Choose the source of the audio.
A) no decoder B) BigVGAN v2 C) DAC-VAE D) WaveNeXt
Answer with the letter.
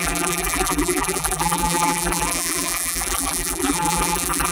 B